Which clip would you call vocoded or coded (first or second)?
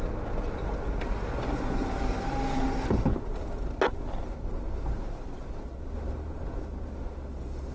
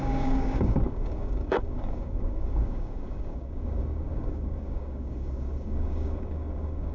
second